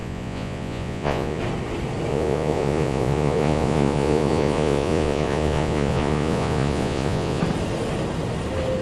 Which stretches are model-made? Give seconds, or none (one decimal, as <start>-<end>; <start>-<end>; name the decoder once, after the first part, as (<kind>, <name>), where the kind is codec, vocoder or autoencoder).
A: 0.0-1.4 (vocoder, Vocos); 2.1-7.4